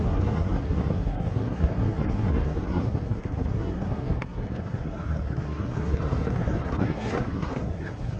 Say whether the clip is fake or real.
fake